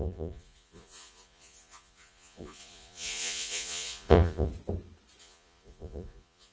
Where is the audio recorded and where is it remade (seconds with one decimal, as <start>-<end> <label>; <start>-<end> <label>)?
0.0-4.5 remade; 4.5-5.2 recorded; 5.2-6.5 remade